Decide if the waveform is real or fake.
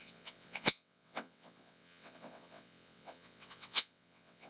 fake